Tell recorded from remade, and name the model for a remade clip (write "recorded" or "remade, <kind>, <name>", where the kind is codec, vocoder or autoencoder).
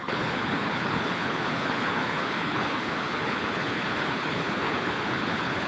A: remade, codec, HILCodec